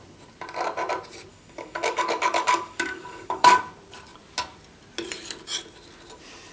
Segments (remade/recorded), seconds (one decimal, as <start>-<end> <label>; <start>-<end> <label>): 0.0-1.3 recorded; 1.3-3.6 remade; 3.6-6.5 recorded